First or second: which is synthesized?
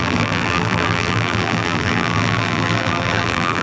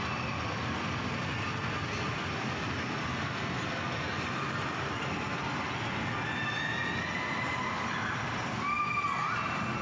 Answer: first